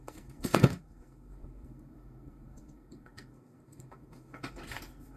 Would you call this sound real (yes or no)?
no